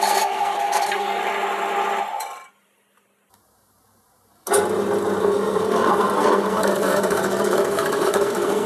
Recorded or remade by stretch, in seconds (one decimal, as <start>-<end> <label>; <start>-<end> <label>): 0.0-1.2 remade; 1.2-5.2 recorded; 5.2-8.7 remade

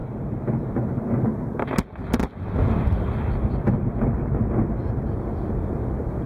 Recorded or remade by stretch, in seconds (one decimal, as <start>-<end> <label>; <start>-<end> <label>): 0.0-6.3 recorded